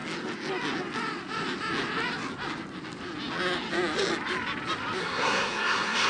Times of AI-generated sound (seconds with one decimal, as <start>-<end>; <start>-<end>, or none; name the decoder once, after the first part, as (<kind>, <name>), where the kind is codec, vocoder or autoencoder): 5.0-6.1 (codec, SNAC)